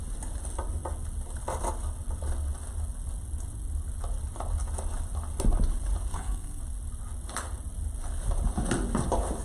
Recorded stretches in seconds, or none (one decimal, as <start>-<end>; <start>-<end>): 0.0-6.1; 6.6-9.4